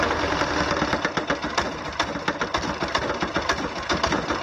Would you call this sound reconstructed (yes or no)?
no